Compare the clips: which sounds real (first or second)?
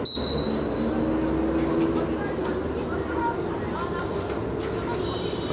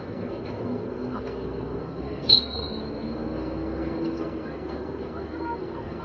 first